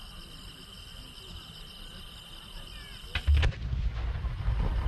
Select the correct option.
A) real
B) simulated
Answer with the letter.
A